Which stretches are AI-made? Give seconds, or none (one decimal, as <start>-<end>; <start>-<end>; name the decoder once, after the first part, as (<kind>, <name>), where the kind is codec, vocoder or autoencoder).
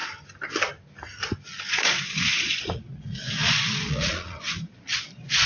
1.7-5.5 (vocoder, Vocos)